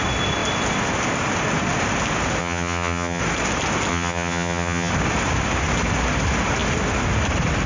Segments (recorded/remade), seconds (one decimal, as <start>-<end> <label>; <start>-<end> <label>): 0.0-2.4 recorded; 2.4-3.2 remade; 3.2-3.9 recorded; 3.9-4.9 remade; 4.9-7.7 recorded